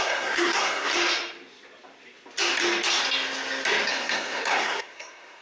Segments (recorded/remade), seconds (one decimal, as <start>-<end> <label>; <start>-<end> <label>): 0.0-0.9 remade; 0.9-3.9 recorded; 3.9-5.4 remade